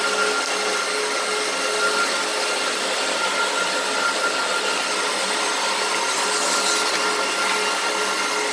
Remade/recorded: recorded